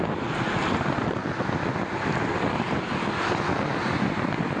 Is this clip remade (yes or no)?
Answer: no